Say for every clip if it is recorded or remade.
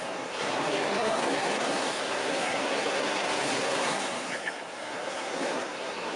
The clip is remade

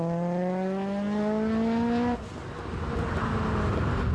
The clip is recorded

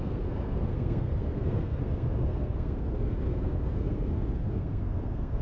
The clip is remade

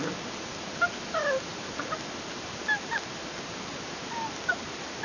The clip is recorded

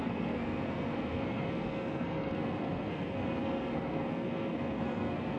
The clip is remade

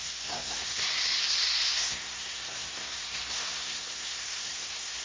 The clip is remade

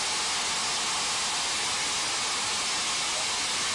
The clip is recorded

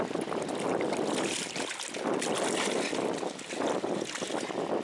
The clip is recorded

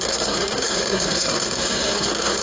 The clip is remade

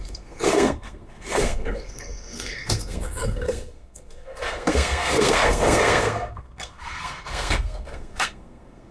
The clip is remade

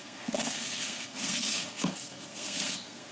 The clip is remade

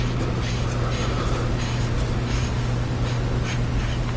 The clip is recorded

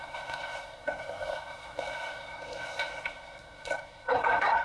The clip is remade